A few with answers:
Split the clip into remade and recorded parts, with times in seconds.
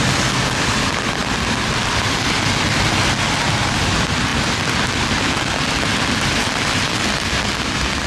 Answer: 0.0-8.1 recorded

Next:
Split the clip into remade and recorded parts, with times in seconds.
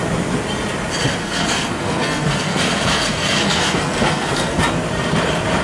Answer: 0.0-1.2 recorded; 1.2-4.6 remade; 4.6-5.6 recorded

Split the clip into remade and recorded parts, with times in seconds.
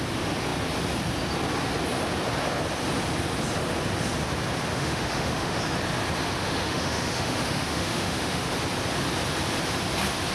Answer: 0.0-4.7 recorded; 4.7-5.6 remade; 5.6-6.4 recorded; 6.4-8.5 remade; 8.5-10.3 recorded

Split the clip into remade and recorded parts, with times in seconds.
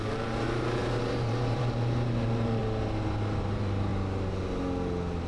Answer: 0.0-2.6 remade; 2.6-3.4 recorded; 3.4-3.9 remade; 3.9-5.3 recorded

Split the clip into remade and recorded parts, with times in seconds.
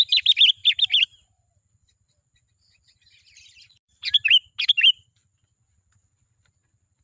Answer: 0.0-4.1 remade; 4.1-6.5 recorded; 6.5-7.0 remade